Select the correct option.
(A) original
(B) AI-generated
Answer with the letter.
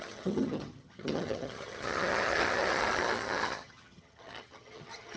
B